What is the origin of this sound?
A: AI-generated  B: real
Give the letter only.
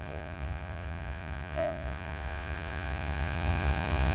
A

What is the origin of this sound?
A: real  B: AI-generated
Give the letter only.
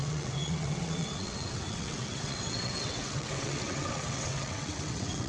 B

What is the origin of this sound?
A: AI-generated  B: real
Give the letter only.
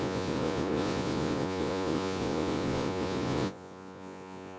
A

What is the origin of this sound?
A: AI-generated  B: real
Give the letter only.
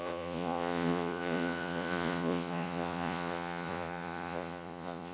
A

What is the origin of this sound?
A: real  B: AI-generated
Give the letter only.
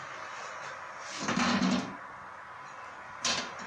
A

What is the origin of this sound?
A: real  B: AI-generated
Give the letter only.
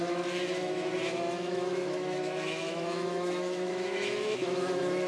B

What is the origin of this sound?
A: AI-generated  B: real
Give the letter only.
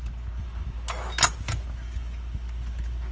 B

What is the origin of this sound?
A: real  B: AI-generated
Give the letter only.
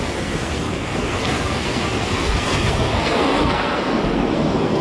B